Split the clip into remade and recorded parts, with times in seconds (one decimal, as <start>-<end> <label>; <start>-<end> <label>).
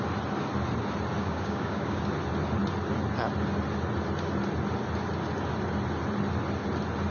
0.0-1.2 recorded; 1.2-2.0 remade; 2.0-7.1 recorded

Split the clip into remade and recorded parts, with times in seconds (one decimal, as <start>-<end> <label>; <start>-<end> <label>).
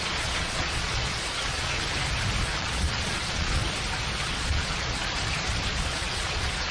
0.0-1.8 remade; 1.8-2.4 recorded; 2.4-3.6 remade; 3.6-4.2 recorded; 4.2-5.0 remade; 5.0-5.7 recorded; 5.7-6.7 remade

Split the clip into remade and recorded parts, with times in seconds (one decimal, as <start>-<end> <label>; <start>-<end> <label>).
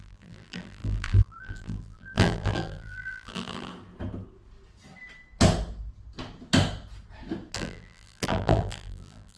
0.0-3.7 remade; 3.7-7.5 recorded; 7.5-9.4 remade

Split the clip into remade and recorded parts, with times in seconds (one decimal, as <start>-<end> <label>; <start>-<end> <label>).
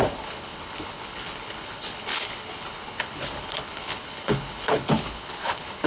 0.0-5.9 remade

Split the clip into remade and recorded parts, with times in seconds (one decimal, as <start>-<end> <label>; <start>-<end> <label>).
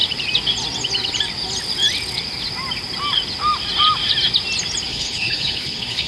0.0-4.9 recorded; 4.9-6.1 remade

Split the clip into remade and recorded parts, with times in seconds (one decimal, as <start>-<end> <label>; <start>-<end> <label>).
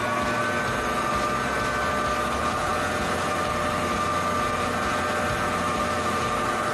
0.0-6.7 recorded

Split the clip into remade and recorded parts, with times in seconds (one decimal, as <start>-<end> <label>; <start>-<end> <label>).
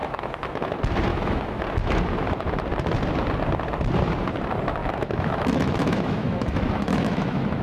0.0-0.7 remade; 0.7-1.1 recorded; 1.1-1.6 remade; 1.6-4.8 recorded; 4.8-7.6 remade